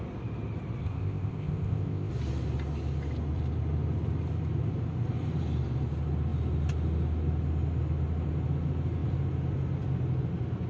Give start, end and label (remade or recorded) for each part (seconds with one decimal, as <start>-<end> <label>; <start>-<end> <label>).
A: 0.0-0.8 recorded; 0.8-2.1 remade; 2.1-10.7 recorded